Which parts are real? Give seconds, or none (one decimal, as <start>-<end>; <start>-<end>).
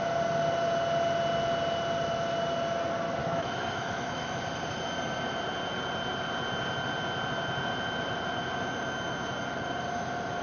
0.0-3.2; 4.4-10.4